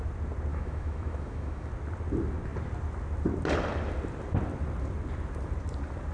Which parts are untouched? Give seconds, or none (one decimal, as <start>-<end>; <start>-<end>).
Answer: 0.0-0.5; 1.7-6.1